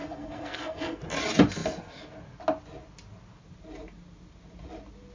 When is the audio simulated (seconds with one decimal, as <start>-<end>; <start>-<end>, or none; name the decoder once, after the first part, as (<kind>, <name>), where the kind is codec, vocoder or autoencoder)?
0.0-1.0 (codec, SNAC)